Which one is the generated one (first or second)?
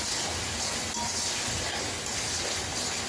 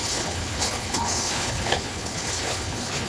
second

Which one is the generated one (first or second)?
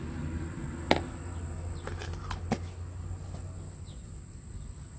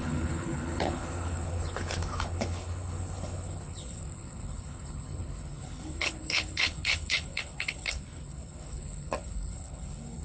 second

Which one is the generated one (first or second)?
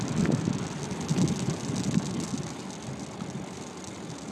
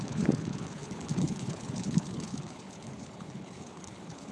second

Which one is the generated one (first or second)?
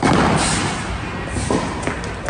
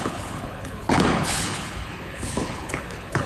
second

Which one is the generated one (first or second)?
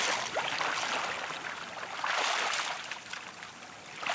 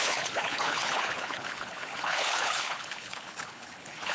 second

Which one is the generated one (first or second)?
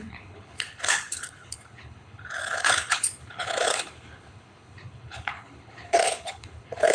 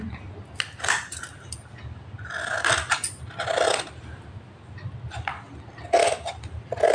first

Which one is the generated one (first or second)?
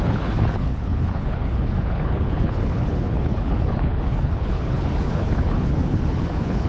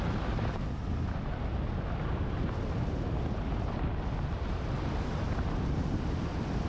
first